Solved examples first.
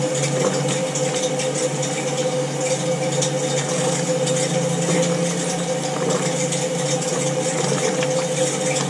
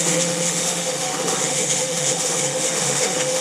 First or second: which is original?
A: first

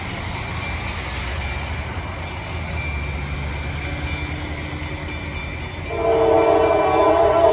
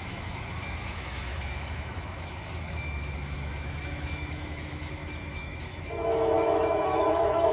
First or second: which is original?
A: first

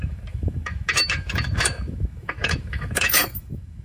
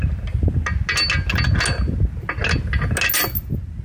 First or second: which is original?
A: second